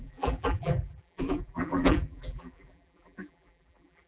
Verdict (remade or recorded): remade